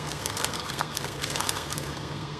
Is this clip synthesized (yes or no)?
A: yes